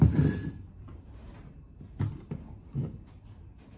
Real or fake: real